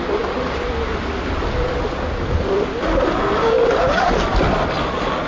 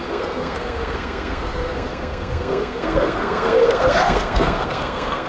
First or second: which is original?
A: first